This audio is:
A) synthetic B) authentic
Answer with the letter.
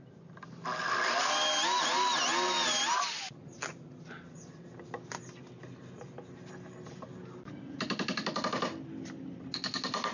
B